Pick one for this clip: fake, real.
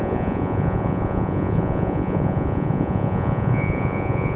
fake